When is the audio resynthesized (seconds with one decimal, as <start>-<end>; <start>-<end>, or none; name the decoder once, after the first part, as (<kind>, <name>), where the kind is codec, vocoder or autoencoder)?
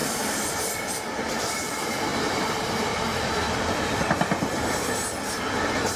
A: 0.0-0.7 (vocoder, BigVGAN v2); 2.1-4.9